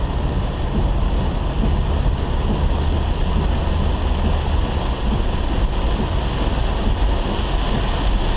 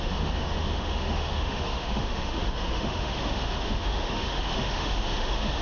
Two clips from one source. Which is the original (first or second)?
first